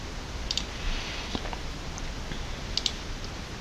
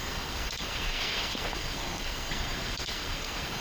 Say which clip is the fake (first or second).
second